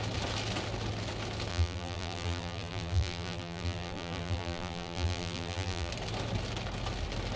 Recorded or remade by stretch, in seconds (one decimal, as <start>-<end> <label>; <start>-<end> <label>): 0.0-1.5 recorded; 1.5-5.9 remade; 5.9-7.4 recorded